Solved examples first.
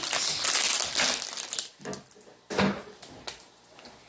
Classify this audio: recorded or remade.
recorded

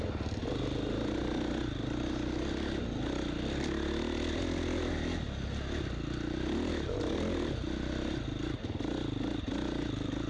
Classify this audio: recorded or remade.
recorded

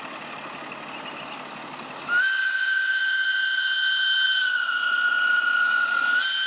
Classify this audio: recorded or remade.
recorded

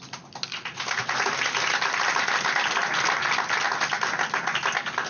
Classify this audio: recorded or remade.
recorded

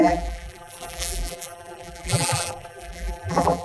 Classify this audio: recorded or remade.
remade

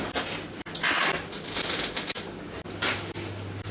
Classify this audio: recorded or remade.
recorded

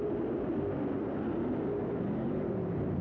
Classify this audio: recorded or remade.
remade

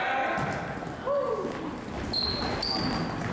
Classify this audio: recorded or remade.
recorded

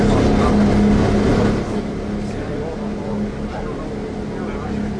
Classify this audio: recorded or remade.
recorded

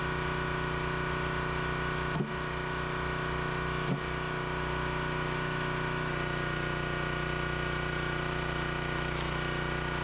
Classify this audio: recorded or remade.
recorded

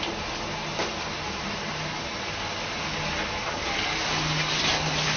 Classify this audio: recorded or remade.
recorded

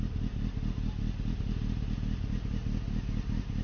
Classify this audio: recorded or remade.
recorded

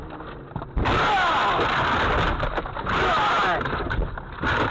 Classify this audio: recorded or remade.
remade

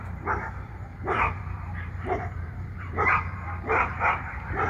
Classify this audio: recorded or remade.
remade